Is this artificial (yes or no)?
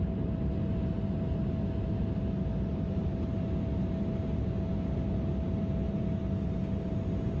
no